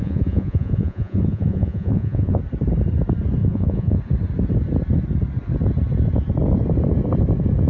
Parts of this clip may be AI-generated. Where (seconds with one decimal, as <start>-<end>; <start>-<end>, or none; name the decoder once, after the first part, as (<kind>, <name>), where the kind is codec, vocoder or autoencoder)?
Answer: 0.0-2.4 (vocoder, Vocos); 3.4-4.0